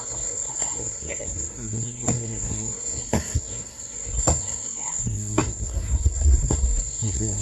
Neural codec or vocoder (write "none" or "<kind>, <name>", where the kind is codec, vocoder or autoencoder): codec, SNAC